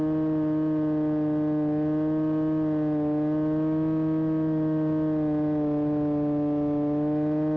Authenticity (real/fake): real